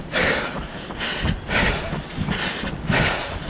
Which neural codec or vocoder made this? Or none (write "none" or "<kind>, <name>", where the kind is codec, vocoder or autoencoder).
none